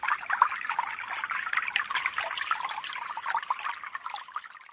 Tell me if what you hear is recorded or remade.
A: recorded